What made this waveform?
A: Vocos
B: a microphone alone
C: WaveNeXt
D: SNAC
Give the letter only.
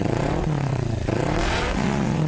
C